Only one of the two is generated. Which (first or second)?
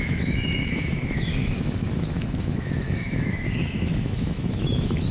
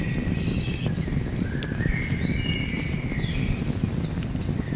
first